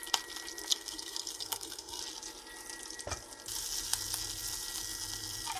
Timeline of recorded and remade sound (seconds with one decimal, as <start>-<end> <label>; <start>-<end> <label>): 0.0-0.7 recorded; 0.7-2.0 remade; 2.0-5.6 recorded